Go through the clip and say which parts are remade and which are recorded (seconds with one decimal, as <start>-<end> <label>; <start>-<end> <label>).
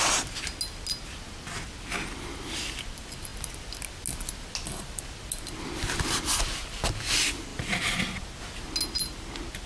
0.0-9.7 recorded